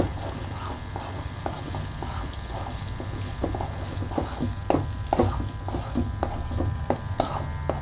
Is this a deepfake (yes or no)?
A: no